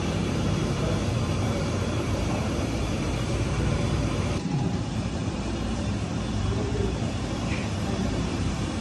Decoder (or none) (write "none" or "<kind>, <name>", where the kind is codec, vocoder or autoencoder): vocoder, BigVGAN v2